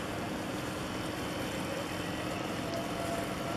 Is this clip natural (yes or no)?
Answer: yes